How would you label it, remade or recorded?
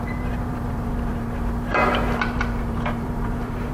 remade